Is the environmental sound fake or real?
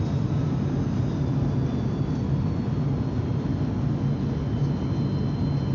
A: real